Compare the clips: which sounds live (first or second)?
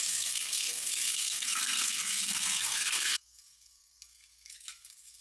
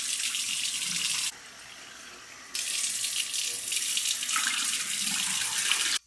second